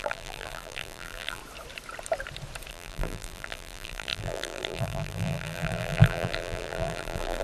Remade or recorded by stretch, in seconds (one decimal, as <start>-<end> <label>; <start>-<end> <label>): 0.0-1.4 remade; 1.4-2.7 recorded; 2.7-7.4 remade